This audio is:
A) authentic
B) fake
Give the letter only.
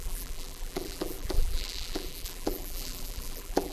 B